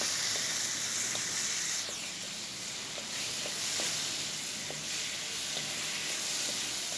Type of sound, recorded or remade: recorded